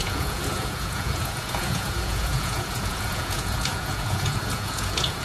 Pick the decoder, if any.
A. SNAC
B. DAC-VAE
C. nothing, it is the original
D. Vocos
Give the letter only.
D